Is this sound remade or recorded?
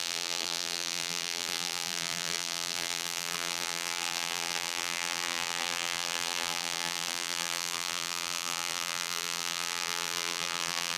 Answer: remade